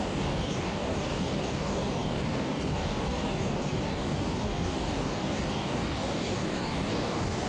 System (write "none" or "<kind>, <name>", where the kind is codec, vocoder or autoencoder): codec, DAC